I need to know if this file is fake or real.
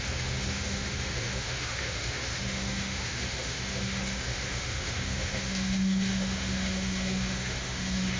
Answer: fake